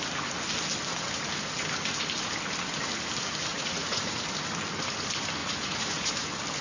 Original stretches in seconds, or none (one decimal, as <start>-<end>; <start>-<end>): 0.0-3.5; 4.2-5.4; 6.1-6.6